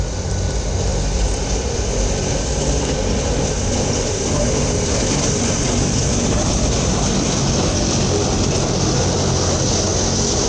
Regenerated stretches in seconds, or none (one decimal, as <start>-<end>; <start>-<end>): none